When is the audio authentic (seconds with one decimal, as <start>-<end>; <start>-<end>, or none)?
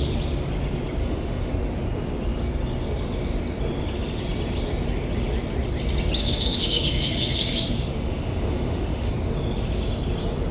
0.0-1.0; 1.5-6.2; 9.1-10.5